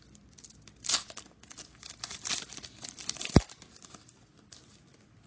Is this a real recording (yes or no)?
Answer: yes